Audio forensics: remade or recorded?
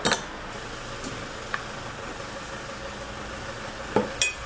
recorded